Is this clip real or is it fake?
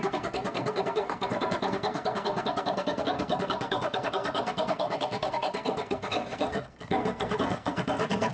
fake